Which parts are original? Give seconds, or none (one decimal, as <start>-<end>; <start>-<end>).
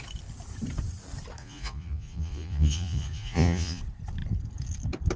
0.0-1.4; 3.8-5.2